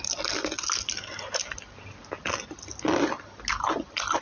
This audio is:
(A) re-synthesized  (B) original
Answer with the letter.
B